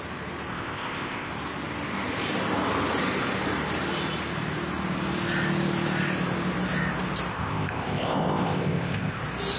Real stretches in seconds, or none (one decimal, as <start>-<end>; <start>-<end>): 0.0-0.5; 1.3-7.3; 9.2-9.6